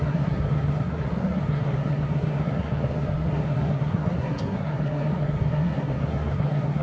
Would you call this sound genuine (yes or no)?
no